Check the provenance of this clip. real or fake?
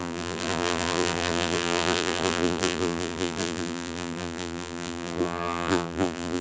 fake